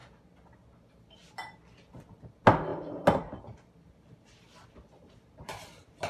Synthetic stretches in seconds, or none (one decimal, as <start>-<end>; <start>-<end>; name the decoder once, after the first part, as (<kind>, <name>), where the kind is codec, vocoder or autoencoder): none